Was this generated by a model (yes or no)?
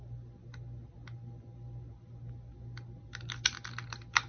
no